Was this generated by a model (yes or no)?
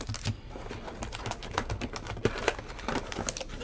no